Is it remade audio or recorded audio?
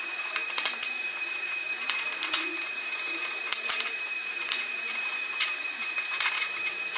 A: remade